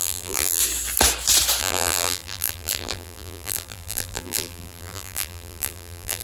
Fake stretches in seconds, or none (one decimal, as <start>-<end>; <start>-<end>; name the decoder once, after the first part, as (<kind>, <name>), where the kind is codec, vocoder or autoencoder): 0.0-0.6 (vocoder, BigVGAN v2); 1.6-6.2